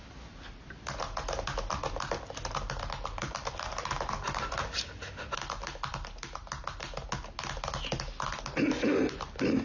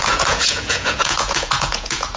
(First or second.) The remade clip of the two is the second